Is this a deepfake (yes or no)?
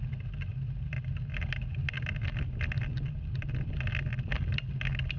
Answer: no